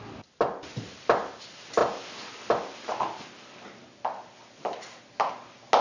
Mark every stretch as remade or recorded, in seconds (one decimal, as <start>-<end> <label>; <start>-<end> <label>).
0.0-5.8 recorded